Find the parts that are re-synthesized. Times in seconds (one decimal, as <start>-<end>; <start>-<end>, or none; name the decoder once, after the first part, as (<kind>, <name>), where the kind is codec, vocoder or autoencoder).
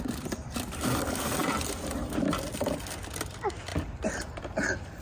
none